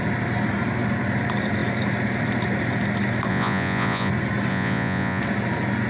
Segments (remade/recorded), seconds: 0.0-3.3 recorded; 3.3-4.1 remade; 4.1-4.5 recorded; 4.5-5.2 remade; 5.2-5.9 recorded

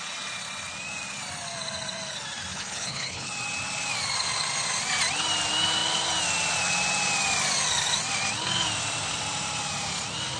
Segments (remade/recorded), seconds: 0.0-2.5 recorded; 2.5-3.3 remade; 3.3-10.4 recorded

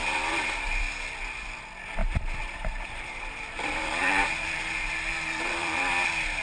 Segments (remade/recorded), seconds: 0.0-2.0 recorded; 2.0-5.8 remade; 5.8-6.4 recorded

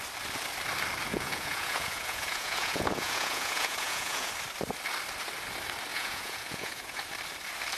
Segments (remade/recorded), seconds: 0.0-1.1 recorded; 1.1-4.3 remade; 4.3-5.9 recorded; 5.9-7.0 remade; 7.0-7.8 recorded